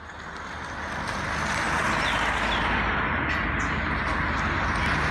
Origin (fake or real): real